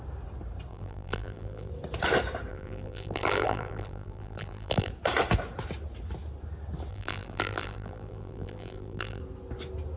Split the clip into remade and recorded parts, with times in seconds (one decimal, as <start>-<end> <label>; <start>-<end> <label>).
0.0-0.7 recorded; 0.7-1.7 remade; 1.7-2.5 recorded; 2.5-4.9 remade; 4.9-6.9 recorded; 6.9-9.2 remade; 9.2-10.0 recorded